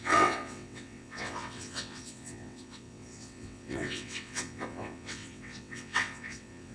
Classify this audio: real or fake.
fake